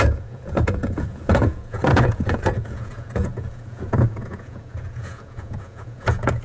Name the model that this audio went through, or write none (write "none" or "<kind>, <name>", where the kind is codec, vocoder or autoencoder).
vocoder, Vocos